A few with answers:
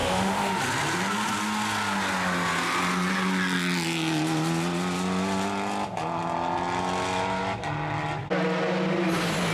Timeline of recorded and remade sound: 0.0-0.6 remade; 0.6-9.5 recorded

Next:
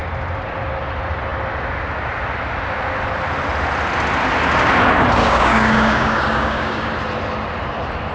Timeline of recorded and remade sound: 0.0-5.2 recorded; 5.2-6.9 remade; 6.9-8.1 recorded